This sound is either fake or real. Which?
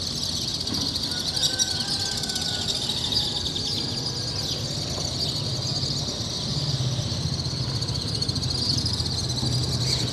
real